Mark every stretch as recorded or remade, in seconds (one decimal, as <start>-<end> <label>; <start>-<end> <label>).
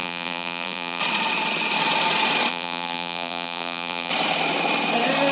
0.0-1.0 remade; 1.0-2.5 recorded; 2.5-4.1 remade; 4.1-5.3 recorded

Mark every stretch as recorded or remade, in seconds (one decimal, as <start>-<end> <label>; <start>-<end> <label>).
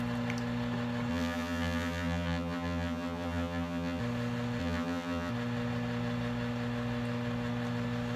0.0-1.1 recorded; 1.1-4.0 remade; 4.0-4.6 recorded; 4.6-5.3 remade; 5.3-8.2 recorded